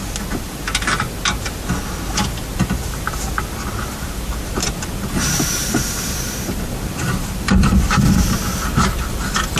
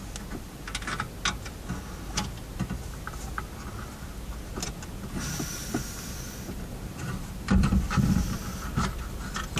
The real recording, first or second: second